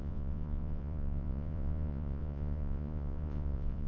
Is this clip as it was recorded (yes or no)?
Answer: no